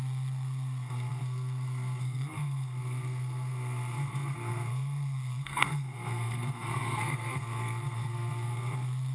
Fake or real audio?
fake